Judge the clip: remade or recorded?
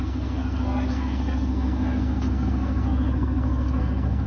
remade